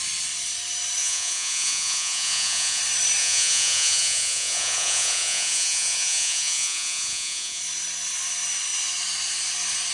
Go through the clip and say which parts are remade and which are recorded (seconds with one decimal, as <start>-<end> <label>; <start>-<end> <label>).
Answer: 0.0-1.0 recorded; 1.0-2.8 remade; 2.8-3.2 recorded; 3.2-7.6 remade; 7.6-9.9 recorded